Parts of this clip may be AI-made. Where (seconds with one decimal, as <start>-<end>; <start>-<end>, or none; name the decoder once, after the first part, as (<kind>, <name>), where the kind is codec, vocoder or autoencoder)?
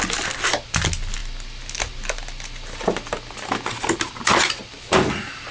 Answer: none